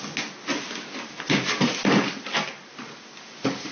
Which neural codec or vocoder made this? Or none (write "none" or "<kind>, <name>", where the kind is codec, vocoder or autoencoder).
none